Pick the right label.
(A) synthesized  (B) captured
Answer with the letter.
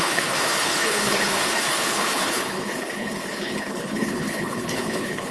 A